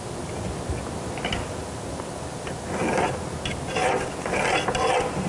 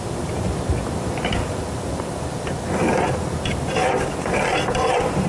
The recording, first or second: first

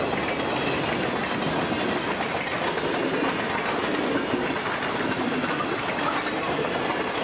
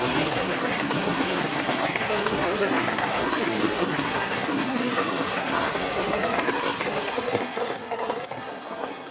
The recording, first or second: first